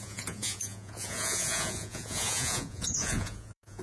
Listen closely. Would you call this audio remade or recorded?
remade